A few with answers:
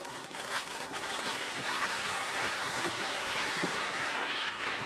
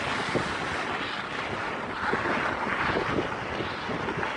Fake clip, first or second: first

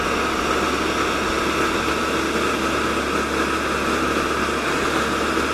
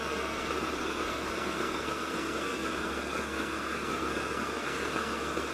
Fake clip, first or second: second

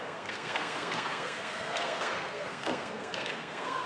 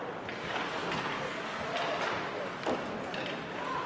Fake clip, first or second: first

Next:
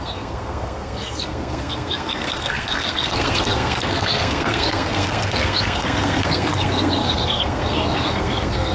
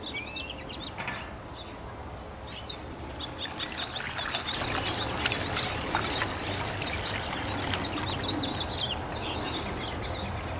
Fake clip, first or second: first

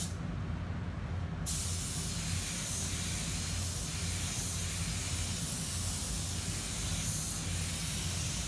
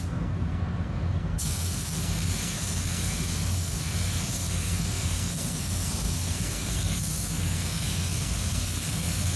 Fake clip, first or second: second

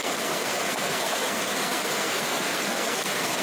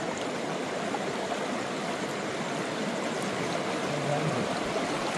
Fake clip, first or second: first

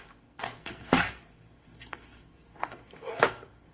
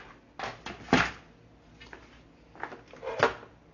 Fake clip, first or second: first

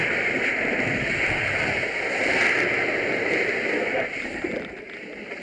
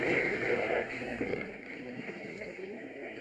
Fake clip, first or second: second